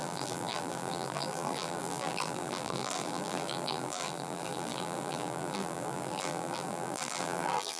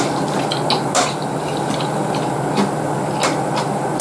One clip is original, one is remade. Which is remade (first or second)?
first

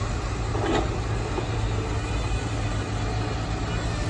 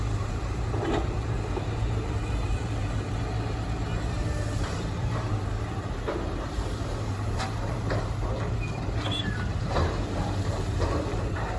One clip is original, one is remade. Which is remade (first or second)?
second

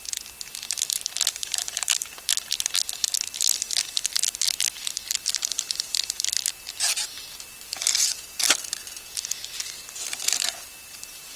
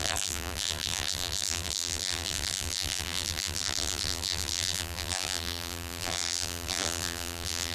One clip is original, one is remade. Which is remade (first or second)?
second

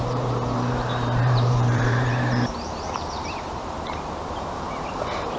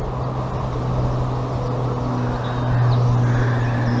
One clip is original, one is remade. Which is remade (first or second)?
first